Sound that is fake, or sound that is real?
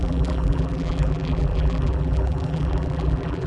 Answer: fake